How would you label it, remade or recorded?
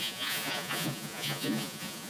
remade